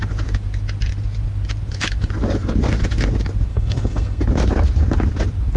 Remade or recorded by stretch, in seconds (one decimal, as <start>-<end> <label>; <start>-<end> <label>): 0.0-3.5 recorded; 3.5-4.2 remade; 4.2-5.6 recorded